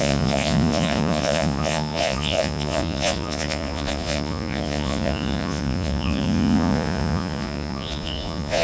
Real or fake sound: fake